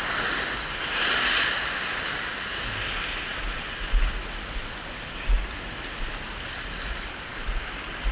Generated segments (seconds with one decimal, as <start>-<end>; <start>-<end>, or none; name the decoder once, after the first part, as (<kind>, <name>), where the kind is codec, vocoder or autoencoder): none